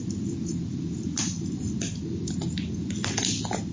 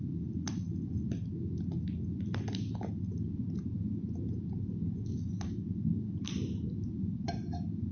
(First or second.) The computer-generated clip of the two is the first